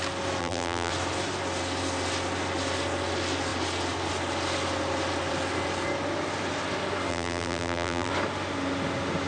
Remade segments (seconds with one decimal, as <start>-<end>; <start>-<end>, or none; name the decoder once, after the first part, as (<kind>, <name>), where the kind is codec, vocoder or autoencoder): 0.4-0.9 (vocoder, BigVGAN v2); 7.1-8.1